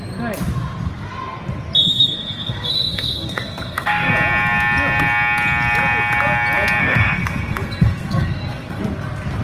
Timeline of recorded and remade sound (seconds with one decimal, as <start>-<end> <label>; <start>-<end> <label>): 0.0-1.8 recorded; 1.8-4.1 remade; 4.1-6.8 recorded; 6.8-8.8 remade; 8.8-9.4 recorded